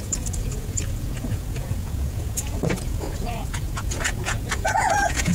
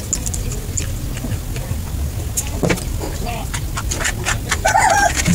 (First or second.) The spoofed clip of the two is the first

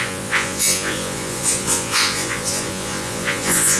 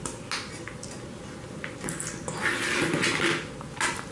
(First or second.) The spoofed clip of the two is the first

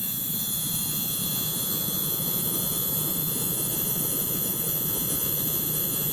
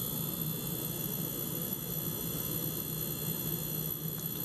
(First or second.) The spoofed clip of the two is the first